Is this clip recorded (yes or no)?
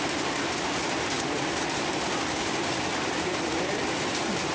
yes